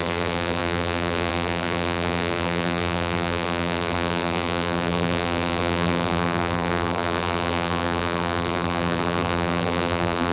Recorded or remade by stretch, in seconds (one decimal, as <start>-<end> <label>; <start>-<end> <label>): 0.0-10.3 remade